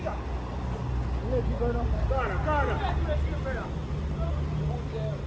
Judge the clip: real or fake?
real